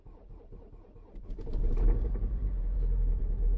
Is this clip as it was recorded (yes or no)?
no